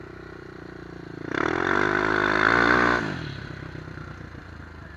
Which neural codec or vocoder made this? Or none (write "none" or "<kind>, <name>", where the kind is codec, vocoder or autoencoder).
vocoder, BigVGAN v2